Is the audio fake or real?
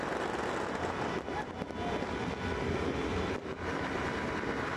real